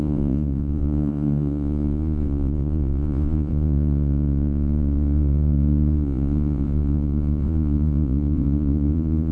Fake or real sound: fake